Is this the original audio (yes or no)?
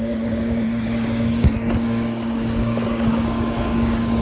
no